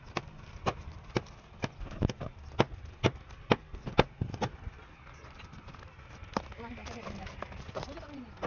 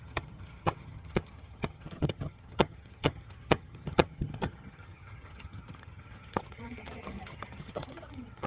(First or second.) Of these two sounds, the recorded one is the first